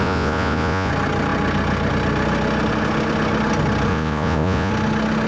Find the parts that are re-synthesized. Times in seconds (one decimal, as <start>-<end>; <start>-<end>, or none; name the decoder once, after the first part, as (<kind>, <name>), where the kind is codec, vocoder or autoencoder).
0.0-0.9 (vocoder, Vocos); 3.9-4.7